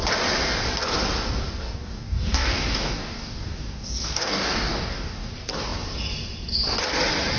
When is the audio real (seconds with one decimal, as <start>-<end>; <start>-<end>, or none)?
0.0-1.6; 5.3-7.4